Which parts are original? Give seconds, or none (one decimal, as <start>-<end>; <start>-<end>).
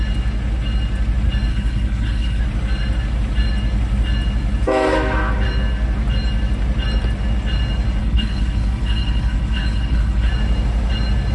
0.0-1.5; 2.4-8.0; 10.3-11.3